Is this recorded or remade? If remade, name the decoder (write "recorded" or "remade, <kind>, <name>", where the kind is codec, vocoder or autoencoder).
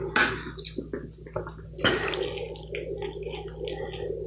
recorded